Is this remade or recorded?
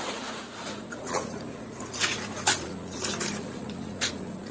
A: remade